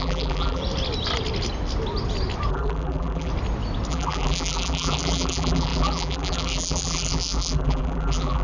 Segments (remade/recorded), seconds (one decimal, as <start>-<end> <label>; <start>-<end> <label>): 0.0-0.6 remade; 0.6-2.5 recorded; 2.5-3.3 remade; 3.3-3.9 recorded; 3.9-8.4 remade